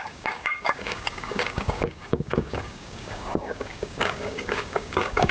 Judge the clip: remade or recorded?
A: remade